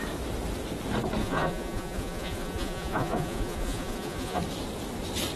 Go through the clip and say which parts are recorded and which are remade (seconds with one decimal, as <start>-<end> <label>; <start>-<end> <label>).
0.0-1.2 recorded; 1.2-4.4 remade; 4.4-5.4 recorded